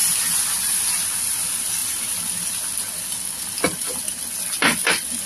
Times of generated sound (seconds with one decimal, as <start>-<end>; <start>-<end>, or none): none